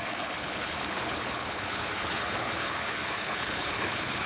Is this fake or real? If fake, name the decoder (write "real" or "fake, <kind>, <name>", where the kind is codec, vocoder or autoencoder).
fake, codec, HILCodec